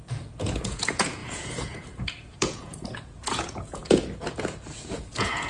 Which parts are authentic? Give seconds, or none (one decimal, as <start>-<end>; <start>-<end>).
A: none